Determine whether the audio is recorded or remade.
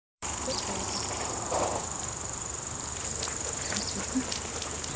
remade